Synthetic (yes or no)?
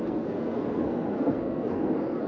yes